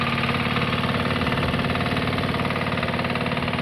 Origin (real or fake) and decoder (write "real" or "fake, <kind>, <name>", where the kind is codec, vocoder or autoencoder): real